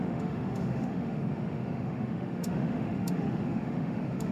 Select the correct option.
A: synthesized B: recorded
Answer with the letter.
A